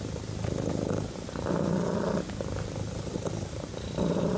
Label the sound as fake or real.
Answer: real